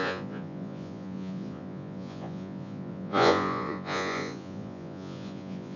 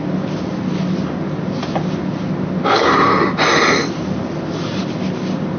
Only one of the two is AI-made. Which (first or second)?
first